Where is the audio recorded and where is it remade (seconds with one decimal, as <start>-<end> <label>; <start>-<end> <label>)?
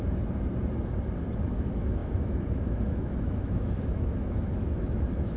0.0-1.5 recorded; 1.5-5.4 remade